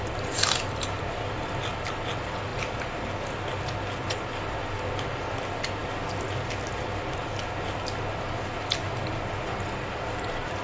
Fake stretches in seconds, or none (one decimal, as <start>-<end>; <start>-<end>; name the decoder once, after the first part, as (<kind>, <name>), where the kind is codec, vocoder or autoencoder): none